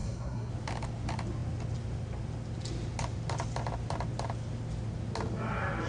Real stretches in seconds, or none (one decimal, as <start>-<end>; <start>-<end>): 0.5-5.9